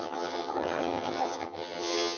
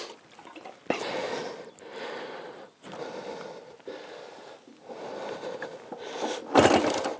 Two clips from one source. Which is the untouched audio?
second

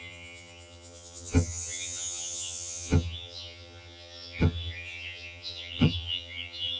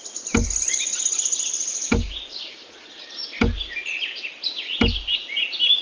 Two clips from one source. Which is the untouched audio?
second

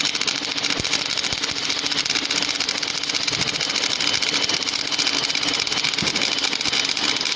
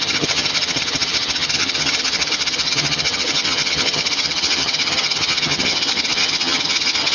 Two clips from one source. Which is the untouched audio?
first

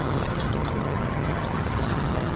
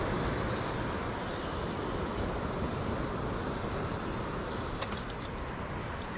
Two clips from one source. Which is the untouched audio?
second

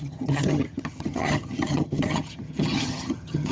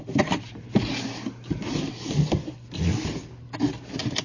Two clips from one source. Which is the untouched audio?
second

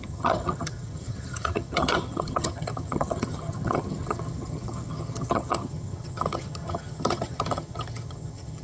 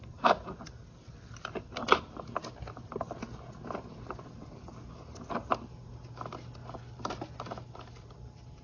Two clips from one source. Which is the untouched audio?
second